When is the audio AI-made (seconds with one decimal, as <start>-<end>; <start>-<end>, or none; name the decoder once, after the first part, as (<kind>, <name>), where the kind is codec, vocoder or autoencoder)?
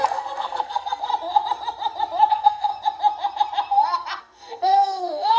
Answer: 0.0-1.1 (codec, SNAC); 2.3-2.7; 4.2-5.4